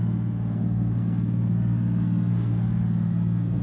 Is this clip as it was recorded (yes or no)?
no